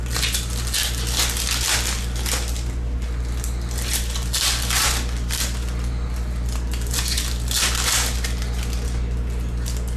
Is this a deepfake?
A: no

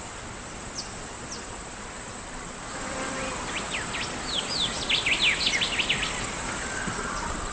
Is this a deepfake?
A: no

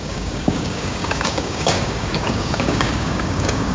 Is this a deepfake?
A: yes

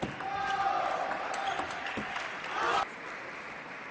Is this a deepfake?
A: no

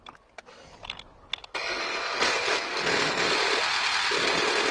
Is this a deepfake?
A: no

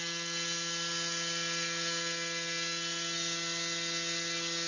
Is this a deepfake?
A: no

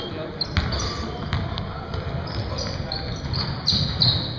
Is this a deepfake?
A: no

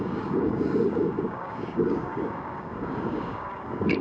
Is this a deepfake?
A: yes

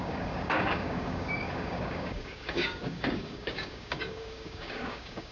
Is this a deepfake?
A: yes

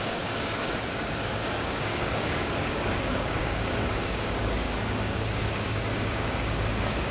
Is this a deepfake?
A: yes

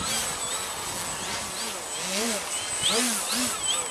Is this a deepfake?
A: no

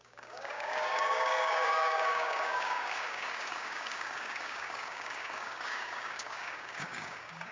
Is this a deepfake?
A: yes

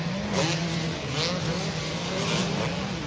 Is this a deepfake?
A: no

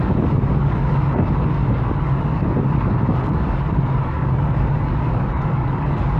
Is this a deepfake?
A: yes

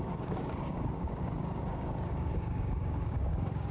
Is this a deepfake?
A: yes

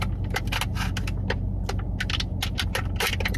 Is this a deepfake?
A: no